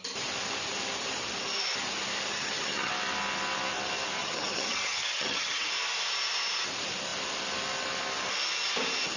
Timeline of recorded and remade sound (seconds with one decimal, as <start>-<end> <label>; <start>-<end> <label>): 0.0-2.3 recorded; 2.3-2.9 remade; 2.9-4.2 recorded; 4.2-5.7 remade; 5.7-9.2 recorded

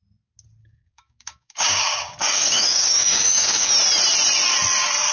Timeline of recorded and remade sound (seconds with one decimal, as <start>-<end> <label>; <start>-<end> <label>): 0.0-0.6 recorded; 0.6-3.7 remade; 3.7-5.1 recorded

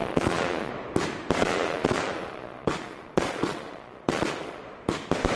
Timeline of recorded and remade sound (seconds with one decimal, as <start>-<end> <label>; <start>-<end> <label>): 0.0-0.7 remade; 0.7-1.4 recorded; 1.4-4.6 remade; 4.6-5.4 recorded